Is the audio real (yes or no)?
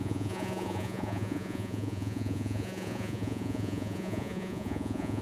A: no